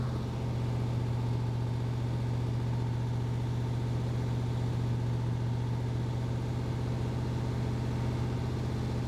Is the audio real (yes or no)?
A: yes